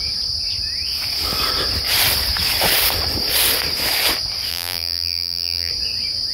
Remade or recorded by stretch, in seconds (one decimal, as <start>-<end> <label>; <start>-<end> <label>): 0.0-4.5 recorded; 4.5-5.7 remade; 5.7-6.3 recorded